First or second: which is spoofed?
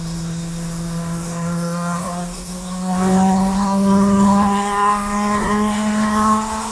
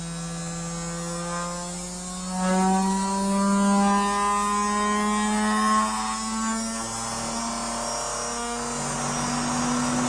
first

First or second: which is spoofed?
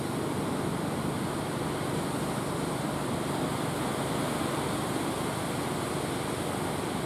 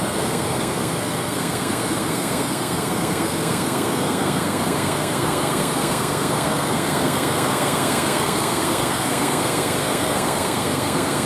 second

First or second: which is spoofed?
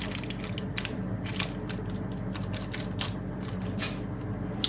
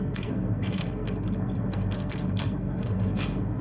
second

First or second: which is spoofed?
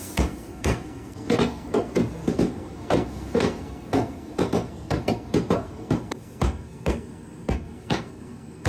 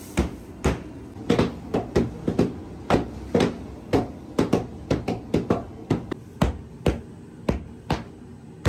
first